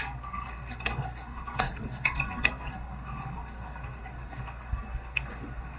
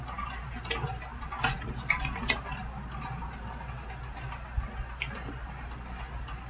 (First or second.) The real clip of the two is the second